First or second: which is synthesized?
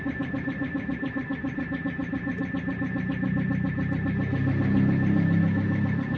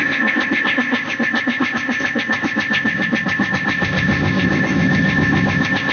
second